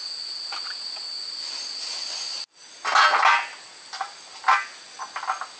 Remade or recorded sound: recorded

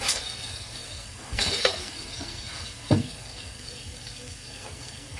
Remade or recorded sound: remade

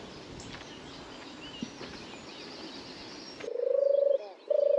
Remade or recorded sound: recorded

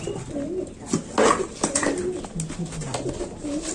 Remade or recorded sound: recorded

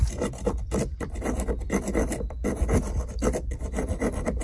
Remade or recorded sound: recorded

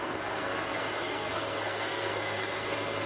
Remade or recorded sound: remade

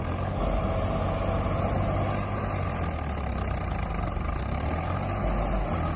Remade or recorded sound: recorded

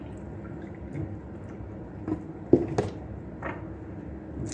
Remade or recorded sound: recorded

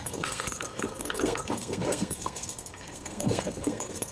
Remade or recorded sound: remade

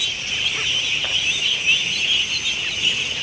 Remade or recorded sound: recorded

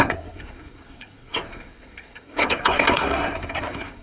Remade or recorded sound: remade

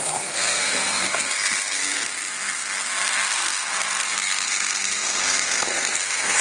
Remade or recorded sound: remade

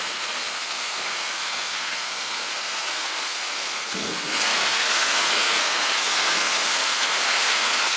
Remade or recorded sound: remade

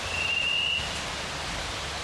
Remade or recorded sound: recorded